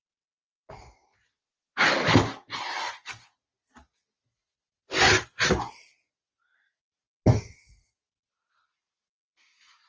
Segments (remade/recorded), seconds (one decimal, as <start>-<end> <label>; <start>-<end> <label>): 0.0-9.9 recorded